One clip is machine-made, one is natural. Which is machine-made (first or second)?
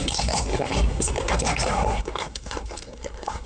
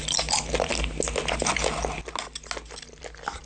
first